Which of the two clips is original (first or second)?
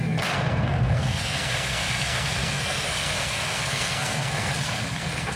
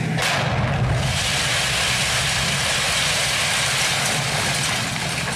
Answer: second